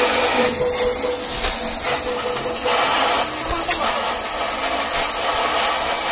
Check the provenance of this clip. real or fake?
real